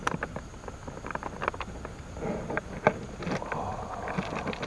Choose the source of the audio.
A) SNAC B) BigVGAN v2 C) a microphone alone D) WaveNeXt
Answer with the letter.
C